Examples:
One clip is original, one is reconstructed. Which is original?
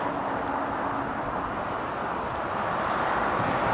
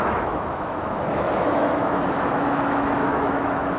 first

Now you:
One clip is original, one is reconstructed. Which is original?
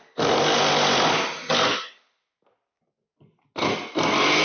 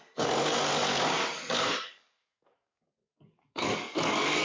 first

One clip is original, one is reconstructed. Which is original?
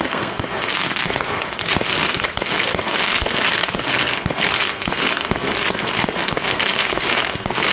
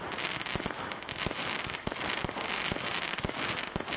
second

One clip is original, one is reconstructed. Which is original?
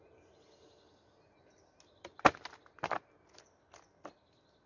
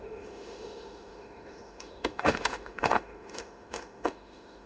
first